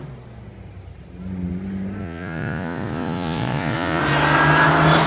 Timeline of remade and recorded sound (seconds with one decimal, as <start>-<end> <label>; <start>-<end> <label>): 0.0-2.0 recorded; 2.0-4.0 remade; 4.0-5.1 recorded